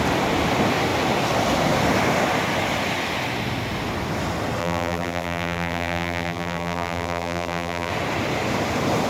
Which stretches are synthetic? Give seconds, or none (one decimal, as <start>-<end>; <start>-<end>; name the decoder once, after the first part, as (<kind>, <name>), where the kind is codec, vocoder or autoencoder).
4.6-7.9 (vocoder, BigVGAN v2)